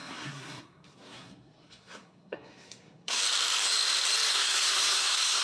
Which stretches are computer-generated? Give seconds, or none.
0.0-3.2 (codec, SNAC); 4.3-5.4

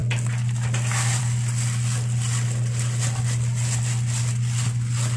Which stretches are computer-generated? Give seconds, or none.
none

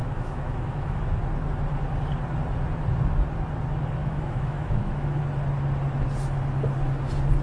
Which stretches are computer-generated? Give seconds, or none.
0.0-1.0 (autoencoder, DAC-VAE); 4.0-5.2

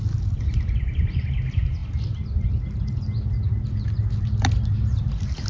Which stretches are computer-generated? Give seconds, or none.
none